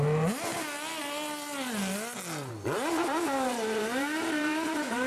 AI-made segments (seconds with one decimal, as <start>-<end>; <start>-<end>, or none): 3.0-5.1